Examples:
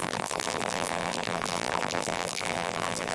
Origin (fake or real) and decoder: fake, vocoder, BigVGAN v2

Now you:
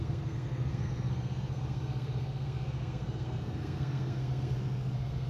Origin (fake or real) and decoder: fake, codec, SNAC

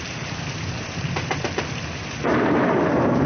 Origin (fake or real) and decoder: fake, vocoder, BigVGAN v2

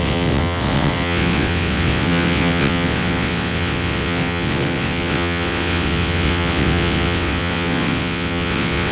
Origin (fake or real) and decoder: fake, vocoder, WaveNeXt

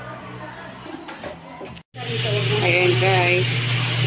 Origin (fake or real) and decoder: real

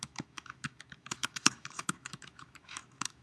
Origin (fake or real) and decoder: fake, autoencoder, DAC-VAE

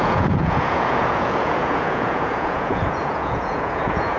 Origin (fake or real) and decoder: fake, vocoder, Vocos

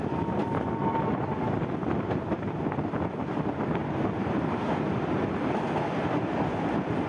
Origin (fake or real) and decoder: real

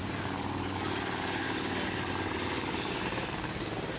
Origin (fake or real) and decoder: real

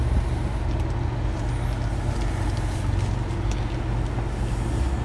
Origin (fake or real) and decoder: real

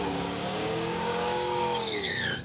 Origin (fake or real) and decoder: fake, codec, DAC